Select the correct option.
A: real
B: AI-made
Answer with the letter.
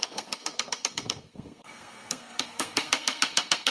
B